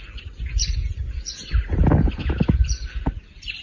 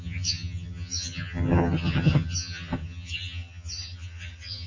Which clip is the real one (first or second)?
first